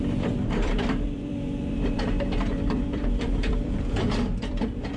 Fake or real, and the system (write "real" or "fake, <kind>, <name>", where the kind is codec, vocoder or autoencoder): fake, vocoder, BigVGAN v2